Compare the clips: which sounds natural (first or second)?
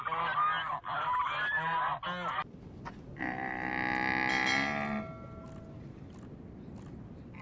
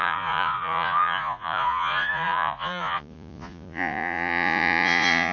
first